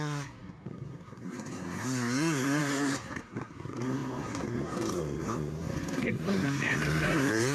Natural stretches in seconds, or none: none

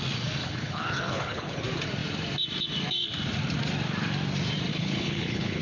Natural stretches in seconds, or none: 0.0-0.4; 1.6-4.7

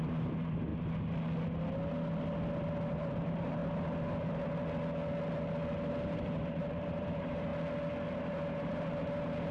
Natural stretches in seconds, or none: 0.7-3.0; 3.6-5.9; 7.5-8.2

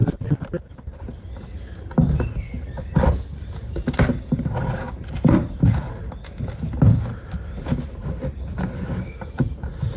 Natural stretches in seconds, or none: 0.0-10.0

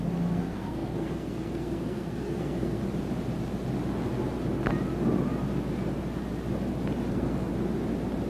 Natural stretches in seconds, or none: 2.8-7.1; 7.5-8.3

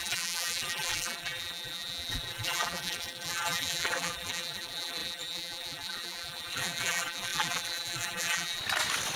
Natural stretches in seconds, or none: 8.6-9.2